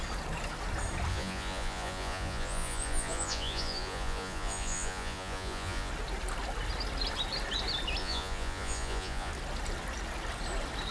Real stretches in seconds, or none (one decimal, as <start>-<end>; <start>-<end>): 0.0-1.1; 5.9-8.0; 9.3-10.9